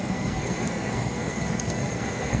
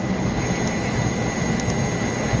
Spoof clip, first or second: first